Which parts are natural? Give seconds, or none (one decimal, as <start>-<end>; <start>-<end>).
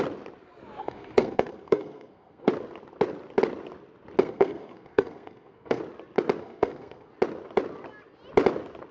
0.0-0.8; 2.5-4.2; 5.8-6.4; 7.1-8.9